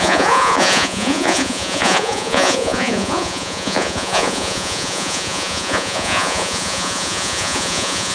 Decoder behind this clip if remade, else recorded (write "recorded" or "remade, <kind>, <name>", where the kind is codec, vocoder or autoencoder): remade, vocoder, Vocos